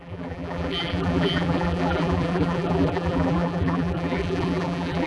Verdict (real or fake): fake